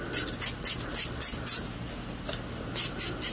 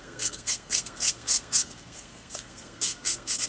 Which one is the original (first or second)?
first